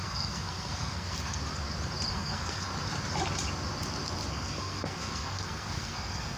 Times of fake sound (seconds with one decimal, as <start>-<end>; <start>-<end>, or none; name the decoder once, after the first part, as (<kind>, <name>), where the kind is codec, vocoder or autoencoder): 0.0-1.4 (codec, SNAC); 2.1-2.7; 4.3-6.4

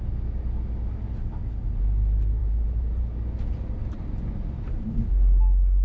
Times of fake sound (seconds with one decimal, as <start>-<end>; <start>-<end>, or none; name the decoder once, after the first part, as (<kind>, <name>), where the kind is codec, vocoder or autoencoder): 2.4-3.0 (vocoder, BigVGAN v2); 3.8-4.9